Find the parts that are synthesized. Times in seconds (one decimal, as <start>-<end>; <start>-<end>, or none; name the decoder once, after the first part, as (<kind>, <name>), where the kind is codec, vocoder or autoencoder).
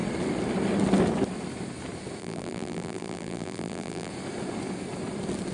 2.2-4.1 (vocoder, BigVGAN v2)